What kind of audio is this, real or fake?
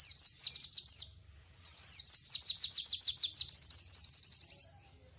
real